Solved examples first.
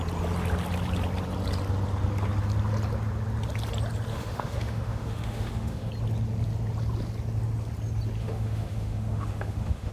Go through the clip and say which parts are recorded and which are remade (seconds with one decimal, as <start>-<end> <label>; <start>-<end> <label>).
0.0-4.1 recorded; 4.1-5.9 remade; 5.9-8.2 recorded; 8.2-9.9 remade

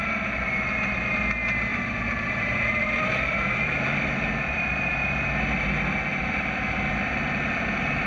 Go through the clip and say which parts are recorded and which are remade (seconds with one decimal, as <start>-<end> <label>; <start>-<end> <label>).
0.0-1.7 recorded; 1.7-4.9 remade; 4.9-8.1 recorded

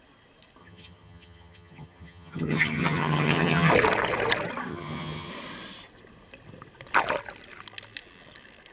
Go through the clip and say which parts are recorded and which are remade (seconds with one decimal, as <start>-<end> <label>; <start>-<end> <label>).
0.0-0.6 recorded; 0.6-3.7 remade; 3.7-4.7 recorded; 4.7-5.3 remade; 5.3-8.7 recorded

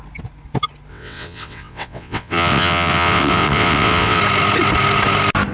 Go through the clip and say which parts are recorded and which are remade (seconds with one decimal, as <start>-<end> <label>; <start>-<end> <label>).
0.0-0.9 recorded; 0.9-4.2 remade; 4.2-5.5 recorded

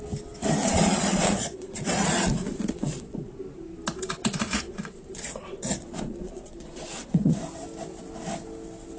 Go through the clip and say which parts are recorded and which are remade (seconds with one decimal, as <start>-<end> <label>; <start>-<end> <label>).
0.0-0.6 recorded; 0.6-3.4 remade; 3.4-4.2 recorded; 4.2-7.4 remade; 7.4-9.0 recorded